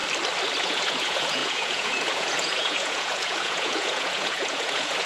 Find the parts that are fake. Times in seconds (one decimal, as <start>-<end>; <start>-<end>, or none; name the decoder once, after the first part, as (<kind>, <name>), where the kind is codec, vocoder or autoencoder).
0.6-5.1 (vocoder, Vocos)